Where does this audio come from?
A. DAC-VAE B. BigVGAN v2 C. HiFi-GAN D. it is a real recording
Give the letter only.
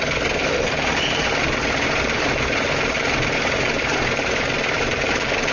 B